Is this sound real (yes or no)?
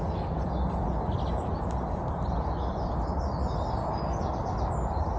yes